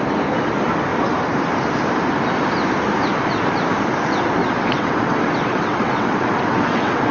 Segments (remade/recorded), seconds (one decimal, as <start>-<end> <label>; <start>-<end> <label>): 0.0-4.4 recorded; 4.4-7.1 remade

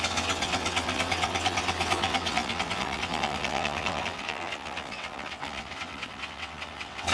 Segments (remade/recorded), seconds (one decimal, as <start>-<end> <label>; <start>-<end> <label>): 0.0-7.1 remade

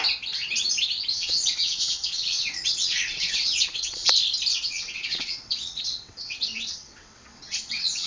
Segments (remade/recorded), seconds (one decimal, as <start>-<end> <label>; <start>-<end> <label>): 0.0-1.1 recorded; 1.1-4.1 remade; 4.1-4.5 recorded; 4.5-8.1 remade